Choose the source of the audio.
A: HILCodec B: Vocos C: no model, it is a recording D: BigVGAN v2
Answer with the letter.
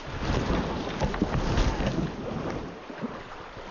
C